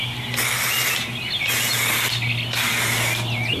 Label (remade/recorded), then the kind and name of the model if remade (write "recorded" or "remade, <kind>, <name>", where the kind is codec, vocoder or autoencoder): recorded